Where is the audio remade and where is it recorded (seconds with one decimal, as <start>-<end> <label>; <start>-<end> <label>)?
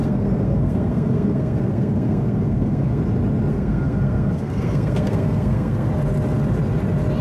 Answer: 0.0-3.0 remade; 3.0-3.5 recorded; 3.5-5.9 remade; 5.9-7.2 recorded